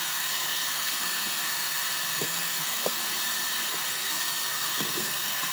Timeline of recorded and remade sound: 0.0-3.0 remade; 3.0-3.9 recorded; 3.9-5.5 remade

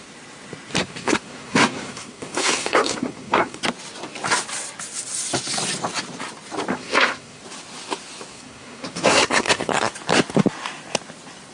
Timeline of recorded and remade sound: 0.0-0.8 recorded; 0.8-3.6 remade; 3.6-6.7 recorded; 6.7-7.4 remade; 7.4-8.3 recorded; 8.3-9.9 remade; 9.9-11.5 recorded

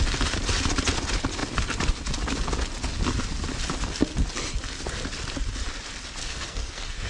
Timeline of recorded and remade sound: 0.0-6.2 recorded; 6.2-7.1 remade

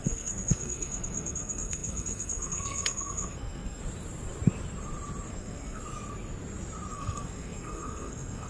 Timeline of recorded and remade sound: 0.0-3.8 remade; 3.8-5.3 recorded; 5.3-5.8 remade; 5.8-6.9 recorded; 6.9-8.5 remade